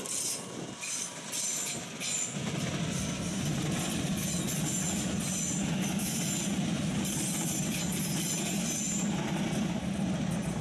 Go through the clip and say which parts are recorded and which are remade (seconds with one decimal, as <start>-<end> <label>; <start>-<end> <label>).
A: 0.0-10.6 recorded